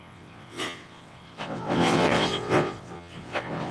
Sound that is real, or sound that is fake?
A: fake